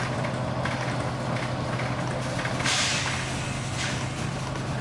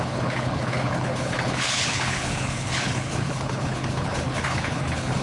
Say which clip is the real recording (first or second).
first